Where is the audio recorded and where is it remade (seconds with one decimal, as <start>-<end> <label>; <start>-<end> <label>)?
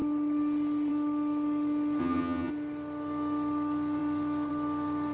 0.0-2.0 recorded; 2.0-2.5 remade; 2.5-5.1 recorded